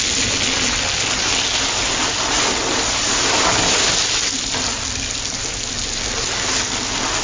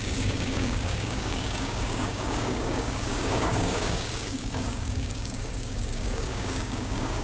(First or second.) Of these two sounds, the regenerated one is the second